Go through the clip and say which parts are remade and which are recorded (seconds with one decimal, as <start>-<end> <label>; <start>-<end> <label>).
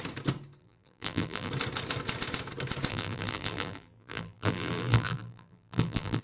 0.0-0.6 recorded; 0.6-1.5 remade; 1.5-2.9 recorded; 2.9-6.2 remade